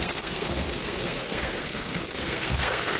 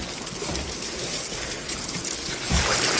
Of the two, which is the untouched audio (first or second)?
second